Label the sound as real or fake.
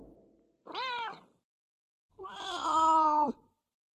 fake